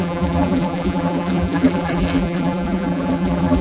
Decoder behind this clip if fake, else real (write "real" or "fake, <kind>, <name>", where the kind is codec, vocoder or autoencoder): fake, vocoder, BigVGAN v2